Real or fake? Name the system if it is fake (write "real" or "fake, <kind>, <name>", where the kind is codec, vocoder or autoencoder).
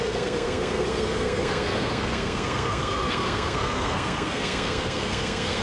fake, codec, SNAC